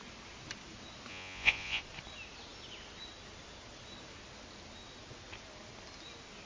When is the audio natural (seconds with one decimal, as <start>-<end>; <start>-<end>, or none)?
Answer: 0.0-1.1; 1.8-6.5